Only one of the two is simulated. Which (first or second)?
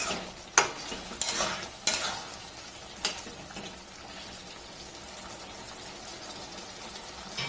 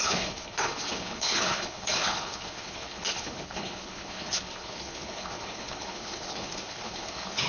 second